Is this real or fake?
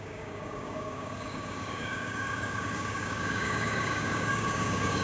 fake